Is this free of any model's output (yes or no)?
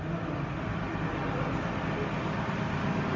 yes